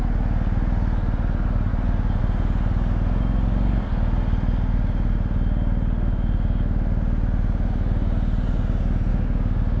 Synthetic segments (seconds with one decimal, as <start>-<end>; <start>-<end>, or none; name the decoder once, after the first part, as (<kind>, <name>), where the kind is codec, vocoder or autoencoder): 9.1-9.8 (codec, DAC)